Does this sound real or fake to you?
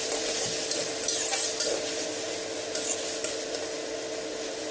real